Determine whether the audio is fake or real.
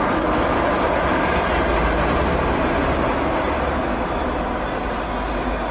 real